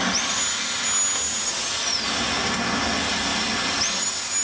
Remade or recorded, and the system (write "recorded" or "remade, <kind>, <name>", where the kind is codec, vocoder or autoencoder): recorded